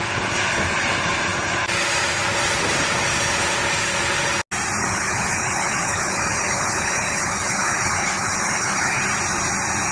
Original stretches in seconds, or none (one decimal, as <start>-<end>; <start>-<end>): 0.0-4.8; 9.0-9.9